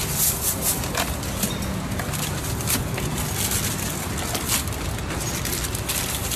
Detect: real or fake real